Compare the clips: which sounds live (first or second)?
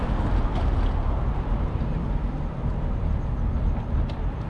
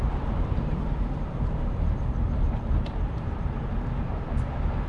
first